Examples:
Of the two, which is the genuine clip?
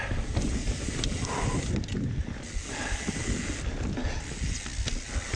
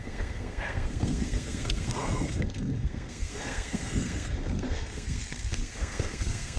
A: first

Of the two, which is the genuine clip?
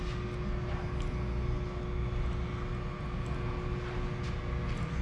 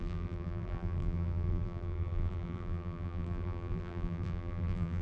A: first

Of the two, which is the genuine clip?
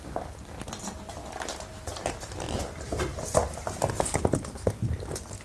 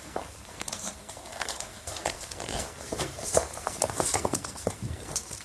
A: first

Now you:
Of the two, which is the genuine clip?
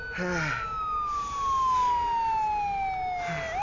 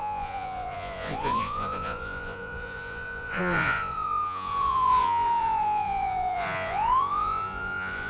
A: first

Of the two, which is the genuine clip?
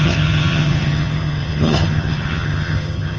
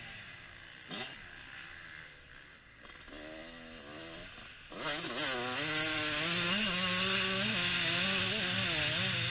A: second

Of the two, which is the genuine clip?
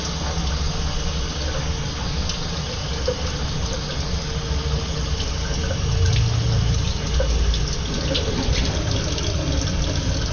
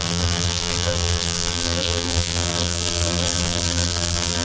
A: first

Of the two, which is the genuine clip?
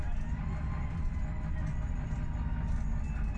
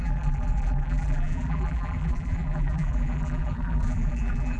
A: first